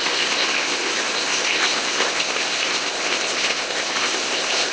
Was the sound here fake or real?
fake